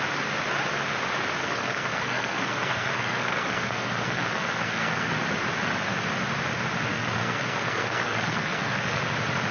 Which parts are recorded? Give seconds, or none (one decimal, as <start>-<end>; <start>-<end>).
0.0-1.4; 5.1-6.9; 9.0-9.5